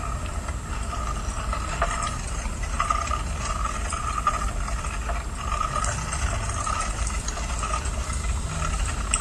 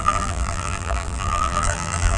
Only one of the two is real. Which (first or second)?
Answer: first